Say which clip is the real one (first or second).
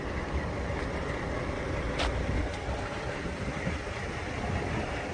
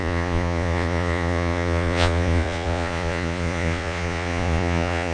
first